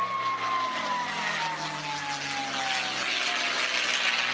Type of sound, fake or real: real